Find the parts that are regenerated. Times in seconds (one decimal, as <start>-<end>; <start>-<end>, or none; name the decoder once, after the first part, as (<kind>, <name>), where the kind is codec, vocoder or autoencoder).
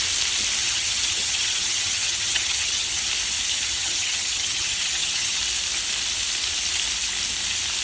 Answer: 0.6-3.1 (vocoder, HiFi-GAN); 3.5-5.4